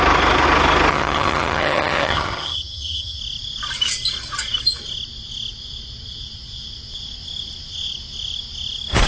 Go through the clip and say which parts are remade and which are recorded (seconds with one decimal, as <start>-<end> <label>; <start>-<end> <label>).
0.0-0.9 recorded; 0.9-3.2 remade; 3.2-9.1 recorded